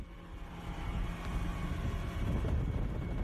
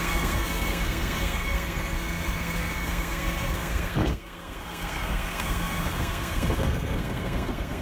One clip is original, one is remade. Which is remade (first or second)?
second